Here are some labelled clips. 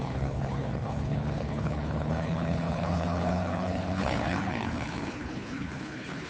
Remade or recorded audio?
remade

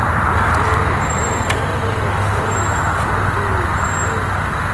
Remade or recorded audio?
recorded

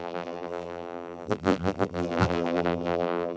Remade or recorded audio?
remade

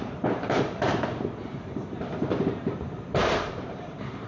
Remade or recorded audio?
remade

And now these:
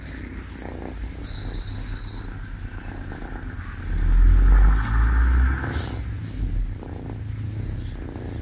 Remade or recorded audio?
recorded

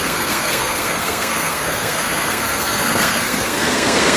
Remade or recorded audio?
remade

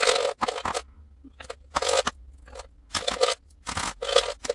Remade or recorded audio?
recorded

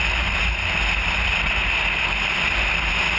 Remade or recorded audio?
recorded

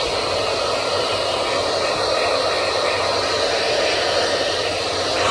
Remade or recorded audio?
recorded